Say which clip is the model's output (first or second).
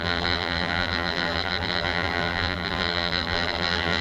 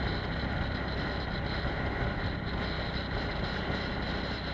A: first